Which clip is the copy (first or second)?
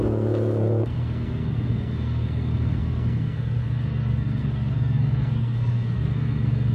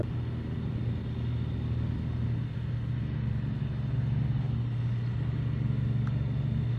first